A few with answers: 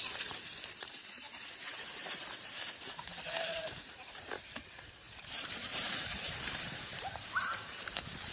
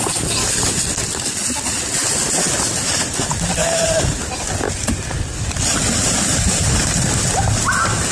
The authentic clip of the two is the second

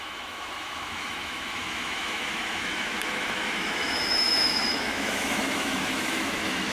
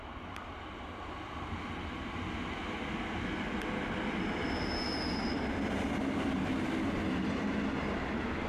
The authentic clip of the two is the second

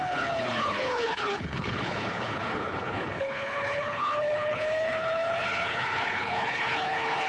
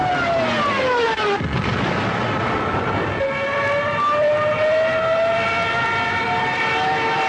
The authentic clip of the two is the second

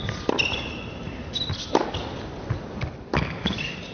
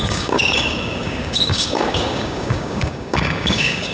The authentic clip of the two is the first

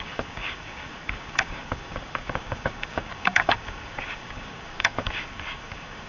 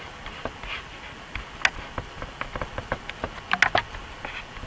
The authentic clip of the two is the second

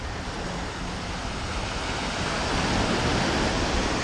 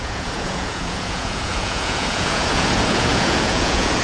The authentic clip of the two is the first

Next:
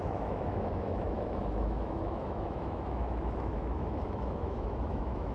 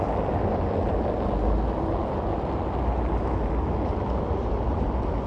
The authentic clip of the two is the second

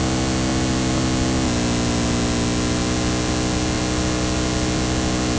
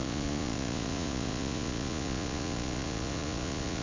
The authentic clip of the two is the first